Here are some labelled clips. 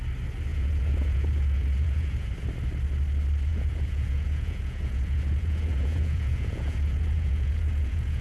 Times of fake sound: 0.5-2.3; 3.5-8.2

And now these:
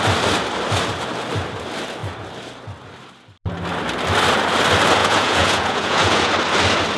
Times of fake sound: 5.0-6.3

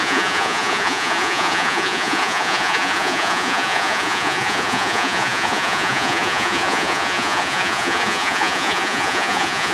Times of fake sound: 0.0-9.7

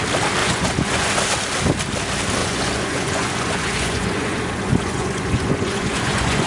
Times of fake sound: 0.4-1.1; 2.4-6.5

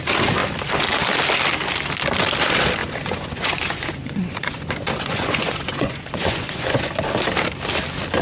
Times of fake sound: 2.8-6.9

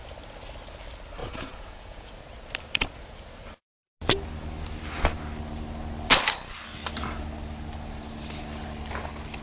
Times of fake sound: 1.2-2.1